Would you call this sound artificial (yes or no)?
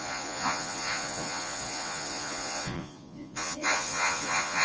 yes